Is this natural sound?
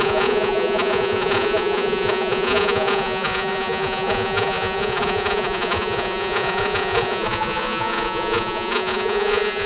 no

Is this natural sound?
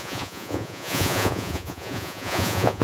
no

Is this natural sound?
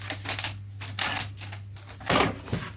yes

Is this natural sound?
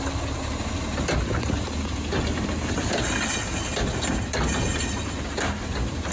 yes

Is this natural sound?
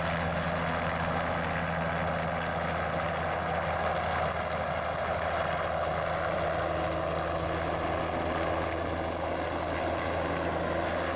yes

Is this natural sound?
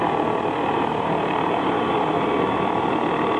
yes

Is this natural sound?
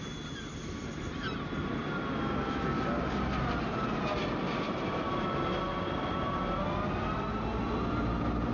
yes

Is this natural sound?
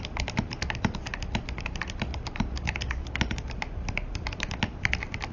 yes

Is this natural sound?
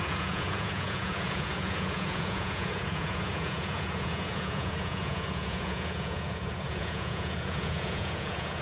no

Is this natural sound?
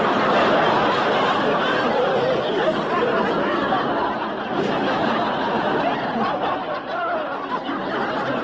yes